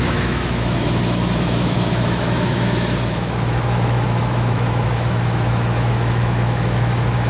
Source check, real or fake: fake